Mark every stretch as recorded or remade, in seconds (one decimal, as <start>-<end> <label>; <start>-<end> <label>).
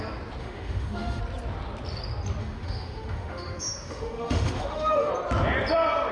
0.0-0.4 recorded; 0.4-1.2 remade; 1.2-2.4 recorded; 2.4-5.1 remade; 5.1-6.1 recorded